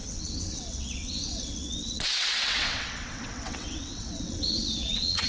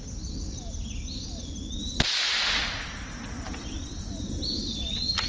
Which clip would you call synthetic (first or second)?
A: first